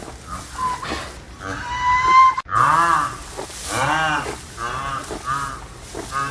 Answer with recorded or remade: recorded